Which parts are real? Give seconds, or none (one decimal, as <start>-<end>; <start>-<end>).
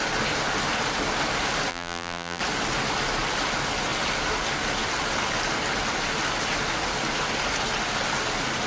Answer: 0.0-1.7; 2.4-8.7